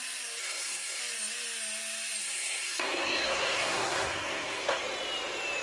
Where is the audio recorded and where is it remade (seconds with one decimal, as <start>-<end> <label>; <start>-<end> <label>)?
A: 0.0-0.4 recorded; 0.4-1.0 remade; 1.0-2.2 recorded; 2.2-4.8 remade; 4.8-5.6 recorded